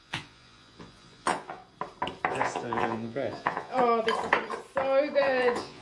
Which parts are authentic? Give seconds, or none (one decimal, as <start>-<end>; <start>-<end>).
1.6-2.3; 3.8-5.2

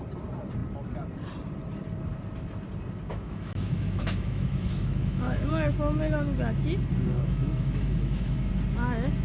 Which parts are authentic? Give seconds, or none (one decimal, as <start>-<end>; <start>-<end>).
0.0-3.1; 5.5-7.1; 8.5-9.2

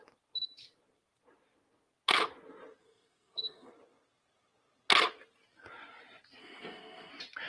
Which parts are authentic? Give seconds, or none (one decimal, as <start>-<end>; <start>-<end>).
0.0-2.8; 3.7-6.4; 7.1-7.5